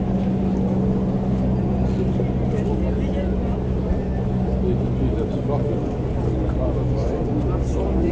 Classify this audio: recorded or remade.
recorded